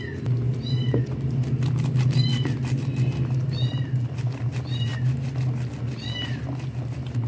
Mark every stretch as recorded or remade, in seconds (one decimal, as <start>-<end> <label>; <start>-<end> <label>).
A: 0.0-7.3 recorded